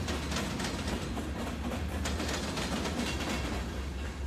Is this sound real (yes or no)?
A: yes